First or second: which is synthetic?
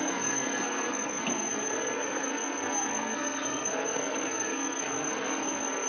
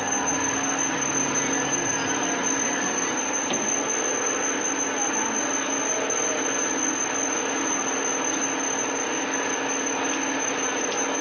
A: first